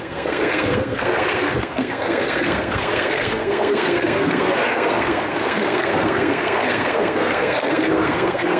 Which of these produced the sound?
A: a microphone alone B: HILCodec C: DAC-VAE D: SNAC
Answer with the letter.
D